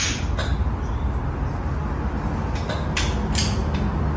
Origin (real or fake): real